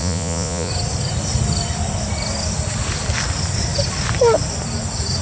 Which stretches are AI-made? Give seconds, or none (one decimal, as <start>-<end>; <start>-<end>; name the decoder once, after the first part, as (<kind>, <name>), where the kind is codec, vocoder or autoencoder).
0.0-0.7 (vocoder, Vocos)